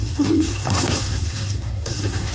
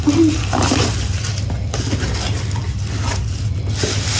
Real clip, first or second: second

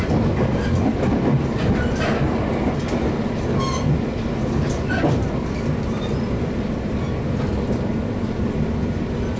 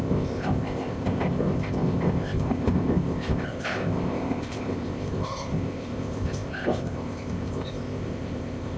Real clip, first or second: first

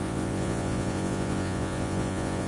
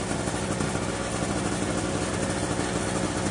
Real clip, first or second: second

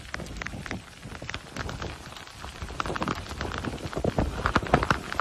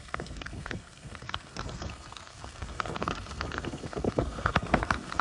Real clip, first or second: first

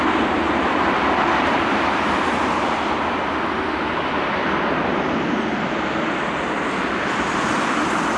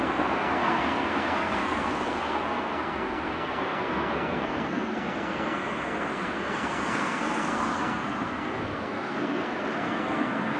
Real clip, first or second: first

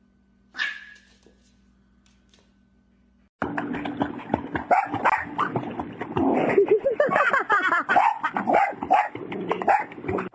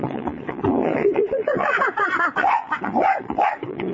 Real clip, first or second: first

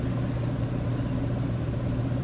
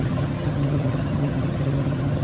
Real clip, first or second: first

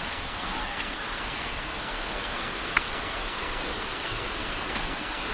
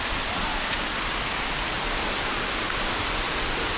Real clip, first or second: second